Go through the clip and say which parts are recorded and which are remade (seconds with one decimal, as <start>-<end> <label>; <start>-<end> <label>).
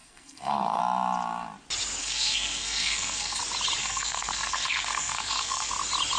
0.0-0.8 remade; 0.8-2.0 recorded; 2.0-3.4 remade; 3.4-3.8 recorded; 3.8-5.7 remade; 5.7-6.2 recorded